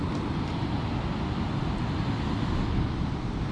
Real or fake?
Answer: real